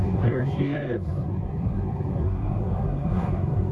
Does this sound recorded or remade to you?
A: remade